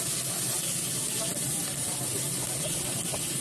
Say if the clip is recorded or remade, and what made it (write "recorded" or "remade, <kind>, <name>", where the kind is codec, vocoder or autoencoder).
recorded